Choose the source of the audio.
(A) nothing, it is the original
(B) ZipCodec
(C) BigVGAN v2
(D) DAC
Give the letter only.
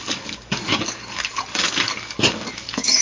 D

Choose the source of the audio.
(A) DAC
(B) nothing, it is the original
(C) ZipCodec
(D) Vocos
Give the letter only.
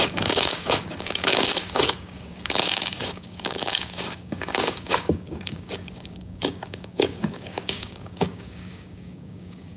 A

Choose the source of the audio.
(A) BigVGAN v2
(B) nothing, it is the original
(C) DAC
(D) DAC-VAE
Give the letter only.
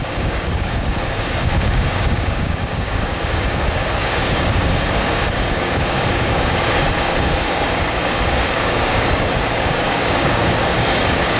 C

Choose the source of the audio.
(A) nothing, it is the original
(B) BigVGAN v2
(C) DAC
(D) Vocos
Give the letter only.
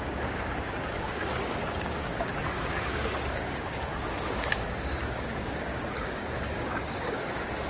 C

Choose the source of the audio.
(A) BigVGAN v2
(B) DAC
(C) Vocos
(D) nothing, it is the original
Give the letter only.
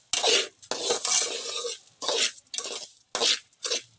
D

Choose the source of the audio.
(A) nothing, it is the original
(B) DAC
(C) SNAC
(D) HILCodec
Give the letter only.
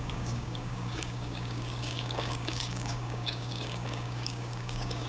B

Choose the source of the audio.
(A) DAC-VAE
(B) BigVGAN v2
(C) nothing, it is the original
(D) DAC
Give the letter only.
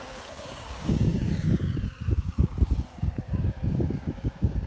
D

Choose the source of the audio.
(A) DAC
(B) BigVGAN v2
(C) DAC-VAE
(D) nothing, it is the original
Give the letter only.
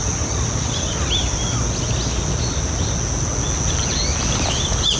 D